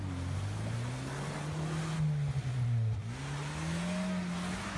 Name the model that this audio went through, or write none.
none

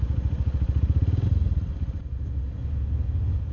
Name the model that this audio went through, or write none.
none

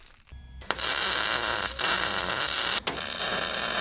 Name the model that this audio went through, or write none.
none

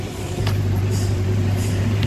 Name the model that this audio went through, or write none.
vocoder, BigVGAN v2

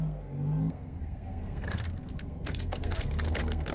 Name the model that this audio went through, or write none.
codec, SNAC